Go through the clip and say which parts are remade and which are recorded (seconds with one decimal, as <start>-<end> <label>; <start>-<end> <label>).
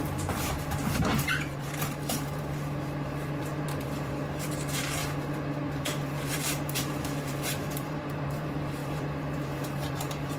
0.0-5.0 remade; 5.0-5.8 recorded; 5.8-10.4 remade